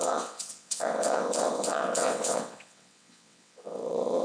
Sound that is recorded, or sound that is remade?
remade